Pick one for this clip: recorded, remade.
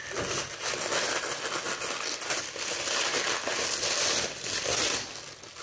recorded